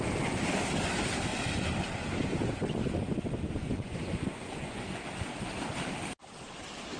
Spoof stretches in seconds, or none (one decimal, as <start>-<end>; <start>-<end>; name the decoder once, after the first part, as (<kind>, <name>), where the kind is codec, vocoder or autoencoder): 3.6-5.0 (vocoder, Vocos)